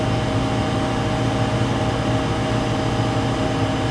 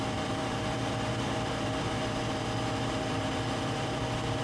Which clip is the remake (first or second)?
second